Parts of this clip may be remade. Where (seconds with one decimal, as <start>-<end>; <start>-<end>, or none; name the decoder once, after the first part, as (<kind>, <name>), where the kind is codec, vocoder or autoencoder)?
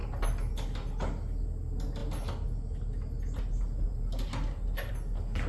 none